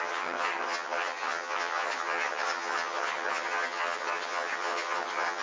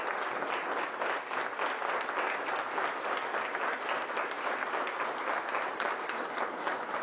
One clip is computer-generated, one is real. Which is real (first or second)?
second